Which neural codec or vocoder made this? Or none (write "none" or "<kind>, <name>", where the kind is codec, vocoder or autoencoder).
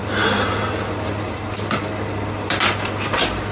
none